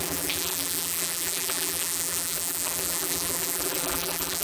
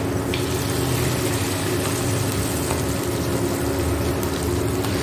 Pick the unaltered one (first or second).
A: second